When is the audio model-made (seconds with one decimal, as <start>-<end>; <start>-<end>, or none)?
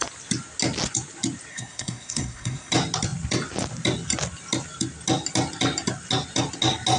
1.5-2.7